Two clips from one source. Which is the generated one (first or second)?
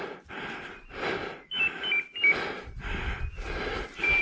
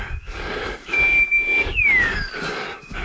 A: second